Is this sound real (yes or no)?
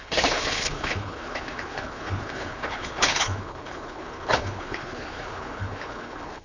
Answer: no